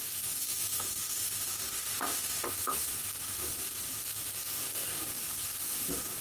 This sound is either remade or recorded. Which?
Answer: remade